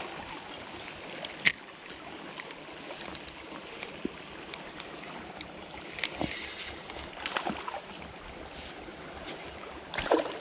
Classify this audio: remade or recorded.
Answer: recorded